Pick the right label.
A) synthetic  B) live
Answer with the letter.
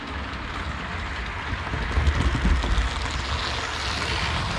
B